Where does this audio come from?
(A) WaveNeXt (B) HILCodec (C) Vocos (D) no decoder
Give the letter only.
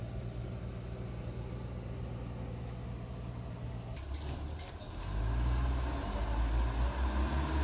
D